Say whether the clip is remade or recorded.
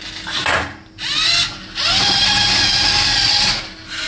recorded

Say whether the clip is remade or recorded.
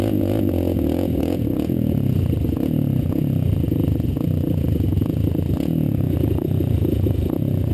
remade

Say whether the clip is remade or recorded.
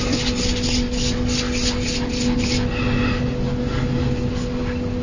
recorded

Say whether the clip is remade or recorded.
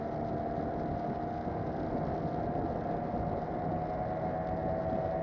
recorded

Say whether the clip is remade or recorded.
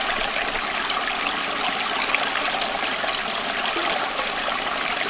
recorded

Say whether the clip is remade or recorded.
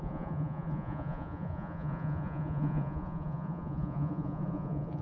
remade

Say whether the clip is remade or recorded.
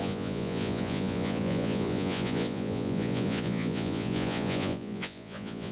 remade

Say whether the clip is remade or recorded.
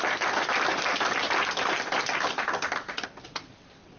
recorded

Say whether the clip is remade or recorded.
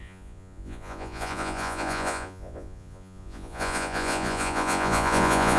remade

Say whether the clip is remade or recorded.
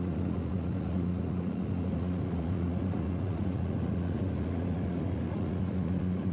remade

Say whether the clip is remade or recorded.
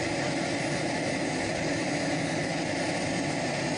recorded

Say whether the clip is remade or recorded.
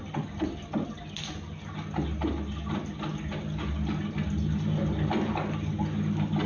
recorded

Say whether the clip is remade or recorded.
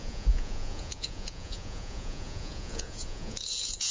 remade